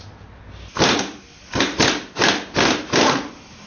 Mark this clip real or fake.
real